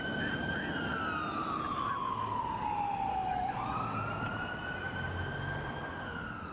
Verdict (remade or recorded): recorded